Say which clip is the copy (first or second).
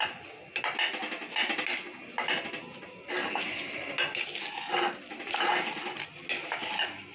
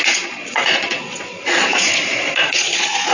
second